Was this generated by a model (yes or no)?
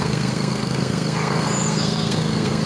yes